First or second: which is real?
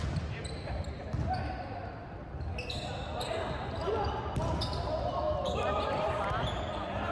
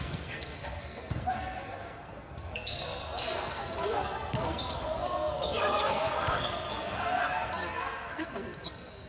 first